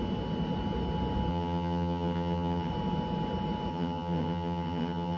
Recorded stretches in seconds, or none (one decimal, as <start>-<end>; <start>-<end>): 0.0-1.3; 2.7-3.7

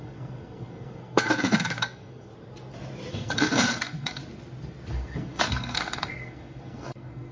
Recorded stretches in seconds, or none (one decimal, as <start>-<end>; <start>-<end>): 2.3-3.1; 4.2-4.9

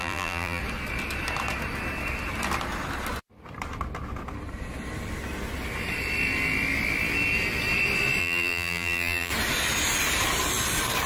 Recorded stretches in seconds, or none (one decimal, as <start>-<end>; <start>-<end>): 0.6-8.2; 9.3-11.1

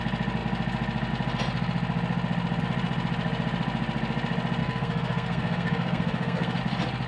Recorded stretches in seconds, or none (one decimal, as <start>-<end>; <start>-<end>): 0.0-4.6; 6.6-7.1

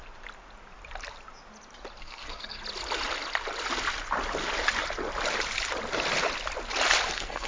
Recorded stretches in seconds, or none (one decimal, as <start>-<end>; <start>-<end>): 0.0-2.0; 2.6-7.1